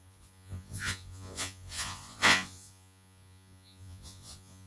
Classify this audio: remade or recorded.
remade